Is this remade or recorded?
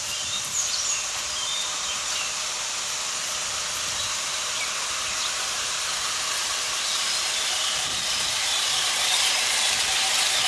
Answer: remade